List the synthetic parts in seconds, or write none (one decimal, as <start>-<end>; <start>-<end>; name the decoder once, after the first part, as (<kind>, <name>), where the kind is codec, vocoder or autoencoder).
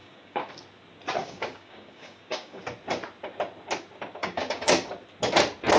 0.0-0.5 (codec, DAC); 1.2-2.6; 4.2-4.7